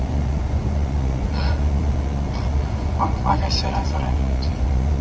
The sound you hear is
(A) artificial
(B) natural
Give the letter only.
A